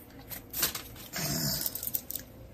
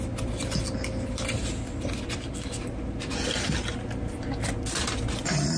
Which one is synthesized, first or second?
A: first